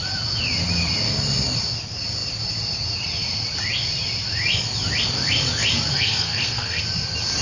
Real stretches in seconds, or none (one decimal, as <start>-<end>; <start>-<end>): 0.0-5.9; 6.8-7.4